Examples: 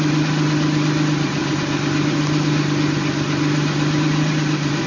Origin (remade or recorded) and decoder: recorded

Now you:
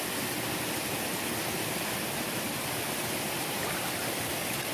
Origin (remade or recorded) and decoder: recorded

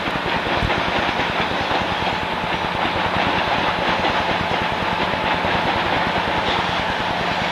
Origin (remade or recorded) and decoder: recorded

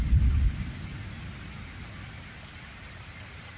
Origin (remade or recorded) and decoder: recorded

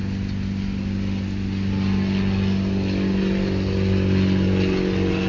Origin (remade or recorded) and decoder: recorded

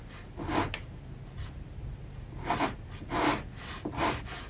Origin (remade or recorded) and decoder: recorded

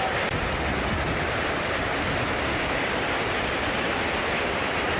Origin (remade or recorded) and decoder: recorded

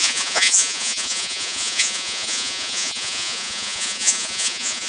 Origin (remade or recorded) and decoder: remade, vocoder, Vocos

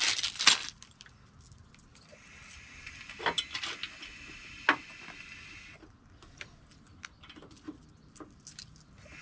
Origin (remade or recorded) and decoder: recorded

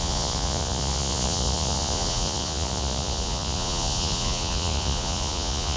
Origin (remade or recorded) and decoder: remade, vocoder, Vocos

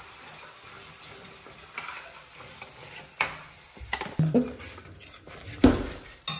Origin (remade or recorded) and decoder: recorded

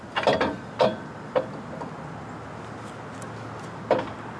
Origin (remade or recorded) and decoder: recorded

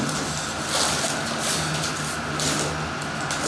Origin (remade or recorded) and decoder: recorded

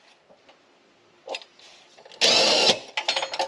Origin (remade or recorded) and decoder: recorded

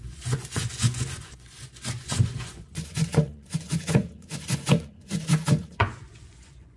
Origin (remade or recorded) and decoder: remade, vocoder, Vocos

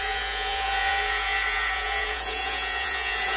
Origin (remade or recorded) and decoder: remade, vocoder, Vocos